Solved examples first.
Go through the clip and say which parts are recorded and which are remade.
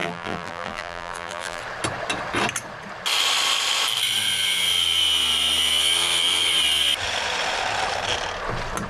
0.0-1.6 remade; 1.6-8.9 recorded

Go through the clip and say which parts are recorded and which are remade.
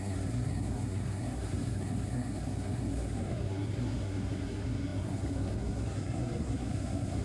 0.0-7.2 remade